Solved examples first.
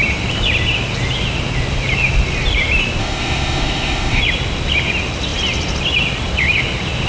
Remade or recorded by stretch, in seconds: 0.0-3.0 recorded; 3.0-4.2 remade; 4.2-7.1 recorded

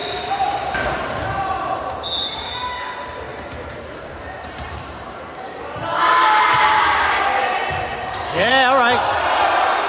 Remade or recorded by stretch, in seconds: 0.0-2.0 remade; 2.0-3.3 recorded; 3.3-7.2 remade; 7.2-7.9 recorded; 7.9-8.5 remade; 8.5-9.9 recorded

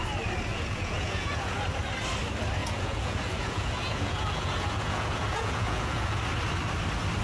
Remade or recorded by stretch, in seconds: 0.0-0.5 recorded; 0.5-1.6 remade; 1.6-2.6 recorded; 2.6-6.2 remade; 6.2-7.2 recorded

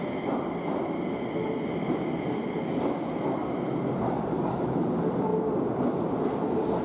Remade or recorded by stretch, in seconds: 0.0-3.4 recorded; 3.4-4.2 remade; 4.2-6.8 recorded

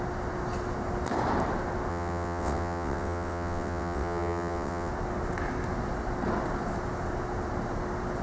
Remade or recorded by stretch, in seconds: 0.0-1.9 recorded; 1.9-4.9 remade; 4.9-8.2 recorded

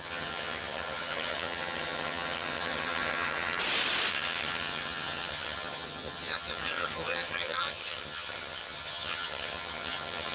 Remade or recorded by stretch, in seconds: 0.0-3.6 remade; 3.6-4.1 recorded; 4.1-10.3 remade

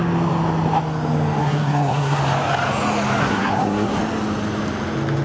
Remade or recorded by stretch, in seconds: 0.0-1.4 recorded; 1.4-2.2 remade; 2.2-3.2 recorded; 3.2-4.0 remade; 4.0-5.2 recorded

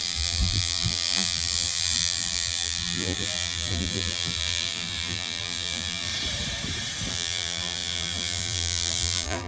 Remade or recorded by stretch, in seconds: 0.0-6.1 remade; 6.1-7.1 recorded; 7.1-9.5 remade